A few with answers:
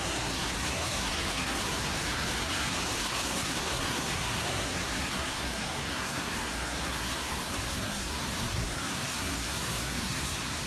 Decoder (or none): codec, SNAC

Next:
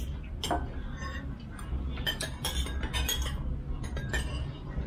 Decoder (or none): none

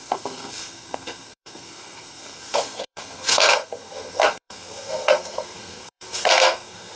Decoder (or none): codec, SNAC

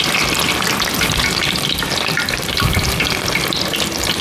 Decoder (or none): none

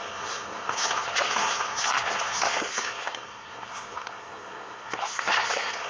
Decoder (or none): codec, SNAC